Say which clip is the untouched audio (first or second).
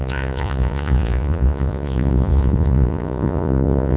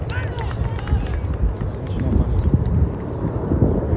second